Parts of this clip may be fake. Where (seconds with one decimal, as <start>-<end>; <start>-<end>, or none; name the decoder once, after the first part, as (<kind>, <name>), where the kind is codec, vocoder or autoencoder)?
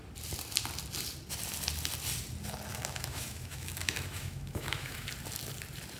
2.7-5.1 (autoencoder, DAC-VAE)